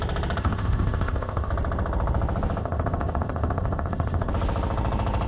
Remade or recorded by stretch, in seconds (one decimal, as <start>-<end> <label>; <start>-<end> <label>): 0.0-0.4 recorded; 0.4-1.5 remade; 1.5-2.6 recorded; 2.6-4.3 remade; 4.3-5.3 recorded